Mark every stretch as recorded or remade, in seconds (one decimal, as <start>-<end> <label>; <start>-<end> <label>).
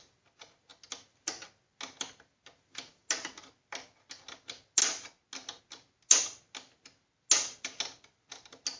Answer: 0.0-8.8 recorded